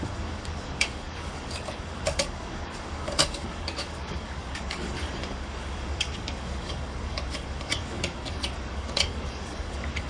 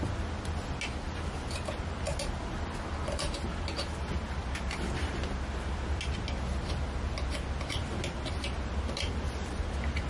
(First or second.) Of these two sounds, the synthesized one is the first